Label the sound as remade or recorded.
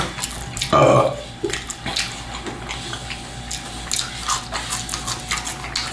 recorded